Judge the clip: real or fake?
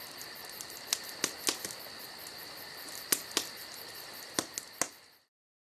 real